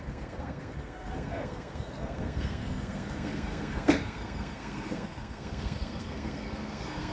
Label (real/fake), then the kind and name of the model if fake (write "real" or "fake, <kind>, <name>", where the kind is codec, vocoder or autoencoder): fake, codec, SNAC